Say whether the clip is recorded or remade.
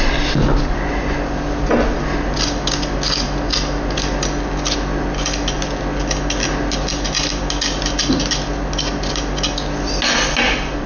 recorded